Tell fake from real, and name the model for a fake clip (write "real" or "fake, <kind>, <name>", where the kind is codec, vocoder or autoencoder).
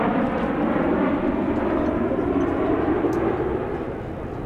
real